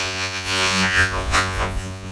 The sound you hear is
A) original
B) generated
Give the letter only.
B